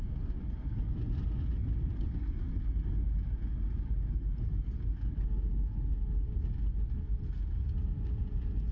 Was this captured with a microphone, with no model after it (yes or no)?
yes